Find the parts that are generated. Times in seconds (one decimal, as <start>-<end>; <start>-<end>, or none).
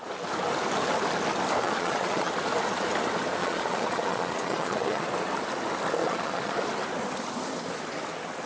1.6-2.3; 3.4-5.1; 6.0-6.5